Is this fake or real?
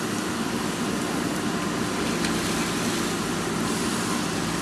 real